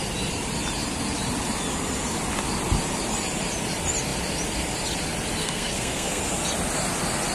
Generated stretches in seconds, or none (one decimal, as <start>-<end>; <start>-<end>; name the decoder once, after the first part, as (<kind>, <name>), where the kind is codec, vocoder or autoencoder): 5.4-6.2 (codec, SNAC)